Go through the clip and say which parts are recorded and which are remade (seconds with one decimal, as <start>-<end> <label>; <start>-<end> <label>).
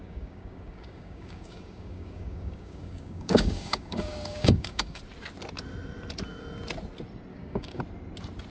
0.0-5.0 remade; 5.0-7.3 recorded; 7.3-7.8 remade; 7.8-8.5 recorded